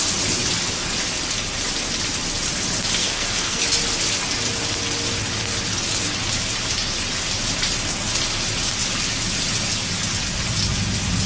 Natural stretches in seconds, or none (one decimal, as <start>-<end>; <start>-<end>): 0.0-3.0; 3.6-11.3

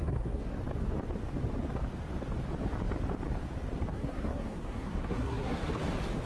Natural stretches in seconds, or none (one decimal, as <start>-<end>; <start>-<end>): 0.6-3.9; 5.7-6.3

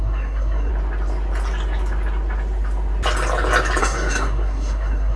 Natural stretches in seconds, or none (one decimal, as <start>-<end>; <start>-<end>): 0.7-3.8

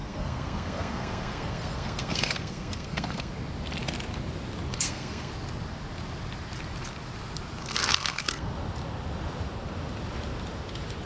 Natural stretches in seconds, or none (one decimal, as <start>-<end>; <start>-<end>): 3.3-4.7; 5.3-7.6; 8.5-11.1

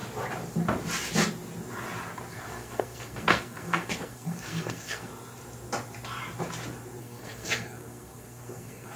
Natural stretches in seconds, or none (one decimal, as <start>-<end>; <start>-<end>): 0.0-2.3; 5.1-7.0

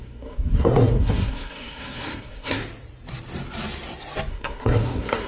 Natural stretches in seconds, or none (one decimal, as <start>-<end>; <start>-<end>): 2.6-4.3